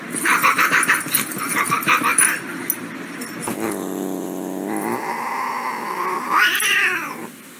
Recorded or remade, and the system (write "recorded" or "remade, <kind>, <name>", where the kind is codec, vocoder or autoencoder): recorded